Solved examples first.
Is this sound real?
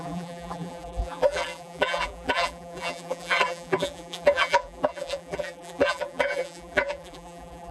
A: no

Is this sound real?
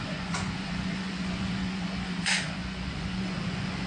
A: no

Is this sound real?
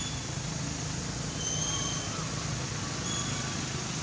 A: yes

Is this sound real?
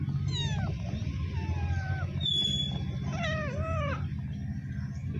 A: yes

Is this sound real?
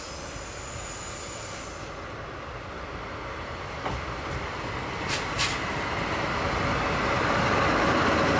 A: yes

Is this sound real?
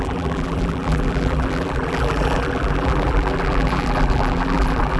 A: no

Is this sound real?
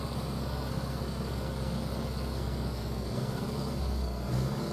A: no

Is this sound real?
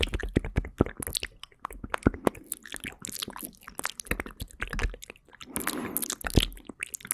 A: yes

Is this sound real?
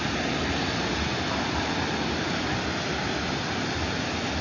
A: yes